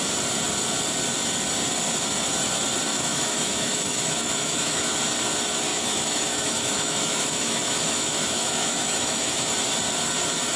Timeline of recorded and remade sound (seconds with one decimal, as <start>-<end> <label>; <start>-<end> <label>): 0.0-2.9 recorded; 2.9-4.9 remade; 4.9-5.7 recorded; 5.7-9.5 remade; 9.5-10.6 recorded